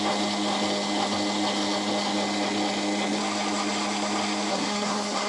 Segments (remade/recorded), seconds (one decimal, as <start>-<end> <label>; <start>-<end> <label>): 0.0-4.5 recorded; 4.5-5.3 remade